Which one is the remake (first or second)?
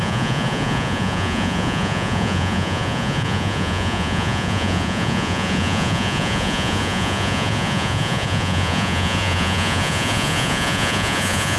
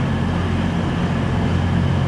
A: first